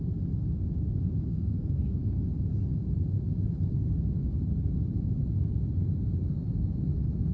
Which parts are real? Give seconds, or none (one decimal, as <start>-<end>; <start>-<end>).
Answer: 0.0-1.3; 2.2-7.3